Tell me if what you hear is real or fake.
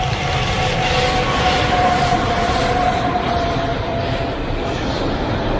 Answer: fake